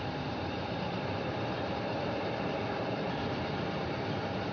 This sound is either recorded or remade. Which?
remade